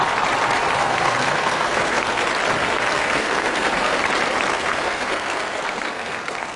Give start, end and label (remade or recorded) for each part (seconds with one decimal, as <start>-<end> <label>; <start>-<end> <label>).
0.0-0.8 recorded; 0.8-2.2 remade; 2.2-2.6 recorded; 2.6-4.0 remade; 4.0-4.5 recorded; 4.5-6.6 remade